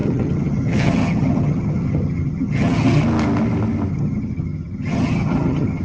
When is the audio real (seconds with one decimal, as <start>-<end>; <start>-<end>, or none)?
3.0-3.9